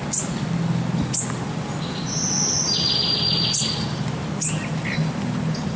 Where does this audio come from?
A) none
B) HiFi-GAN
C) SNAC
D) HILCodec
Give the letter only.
A